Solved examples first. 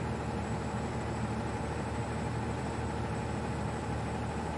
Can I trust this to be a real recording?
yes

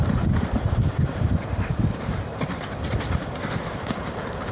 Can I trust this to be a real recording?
no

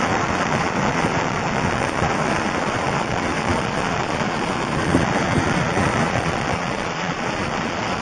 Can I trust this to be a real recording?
no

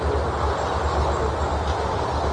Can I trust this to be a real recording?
yes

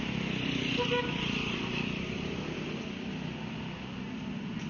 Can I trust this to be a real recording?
yes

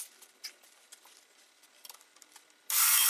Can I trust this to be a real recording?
yes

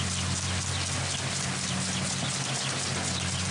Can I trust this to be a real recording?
yes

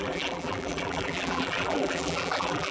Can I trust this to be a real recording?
no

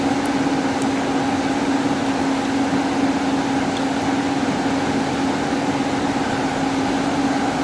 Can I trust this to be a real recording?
yes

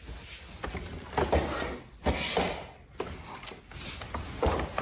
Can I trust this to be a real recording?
yes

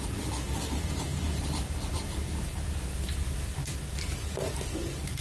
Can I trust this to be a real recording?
yes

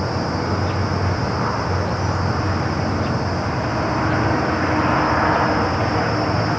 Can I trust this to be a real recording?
yes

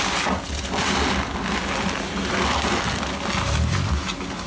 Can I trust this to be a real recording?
yes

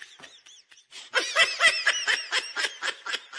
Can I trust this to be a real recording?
yes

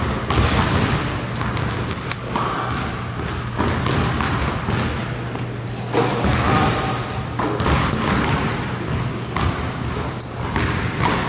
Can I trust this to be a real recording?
yes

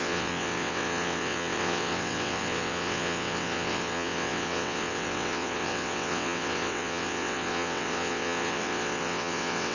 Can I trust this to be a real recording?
no